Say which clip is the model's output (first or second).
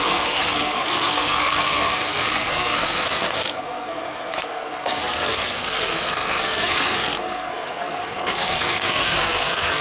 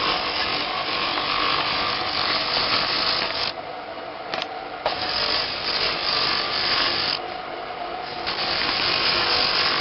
first